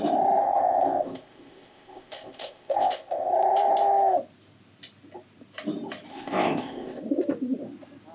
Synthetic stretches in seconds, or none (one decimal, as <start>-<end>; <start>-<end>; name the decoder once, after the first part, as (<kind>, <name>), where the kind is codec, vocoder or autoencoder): 0.4-3.3 (codec, ZipCodec); 6.1-7.0